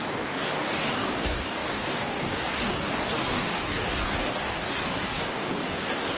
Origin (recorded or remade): remade